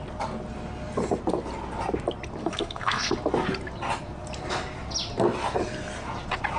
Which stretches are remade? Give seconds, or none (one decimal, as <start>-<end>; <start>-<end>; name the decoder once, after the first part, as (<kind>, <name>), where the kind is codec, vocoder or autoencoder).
2.4-3.1 (codec, SNAC)